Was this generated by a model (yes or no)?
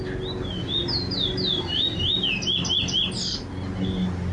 no